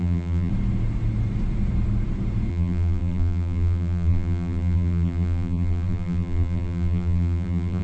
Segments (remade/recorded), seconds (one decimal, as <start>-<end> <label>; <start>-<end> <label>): 0.0-0.5 remade; 0.5-2.5 recorded; 2.5-7.8 remade